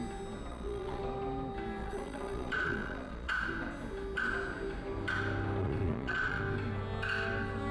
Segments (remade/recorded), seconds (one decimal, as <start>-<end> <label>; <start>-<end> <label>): 0.0-0.5 recorded; 0.5-1.0 remade; 1.0-1.8 recorded; 1.8-3.3 remade; 3.3-5.6 recorded; 5.6-6.4 remade; 6.4-7.7 recorded